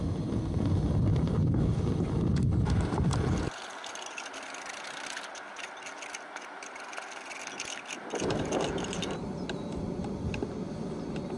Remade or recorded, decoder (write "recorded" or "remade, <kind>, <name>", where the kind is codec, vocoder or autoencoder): recorded